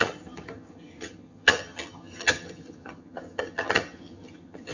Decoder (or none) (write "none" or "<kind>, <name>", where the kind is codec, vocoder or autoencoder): vocoder, HiFi-GAN